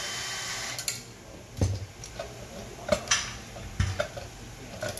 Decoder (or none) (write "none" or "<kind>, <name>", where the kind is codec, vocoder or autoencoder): none